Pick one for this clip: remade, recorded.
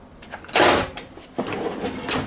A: recorded